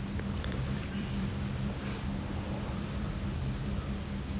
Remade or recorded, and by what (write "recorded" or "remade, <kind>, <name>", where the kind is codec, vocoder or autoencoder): remade, vocoder, BigVGAN v2